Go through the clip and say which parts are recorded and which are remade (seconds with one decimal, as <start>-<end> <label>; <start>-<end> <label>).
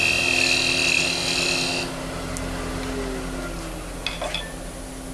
0.0-5.1 recorded